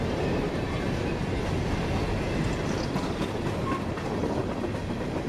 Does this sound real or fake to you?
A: real